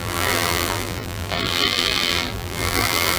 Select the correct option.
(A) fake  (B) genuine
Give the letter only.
A